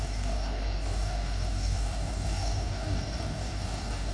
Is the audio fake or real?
fake